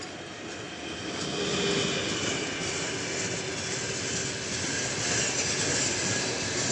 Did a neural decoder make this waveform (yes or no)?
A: no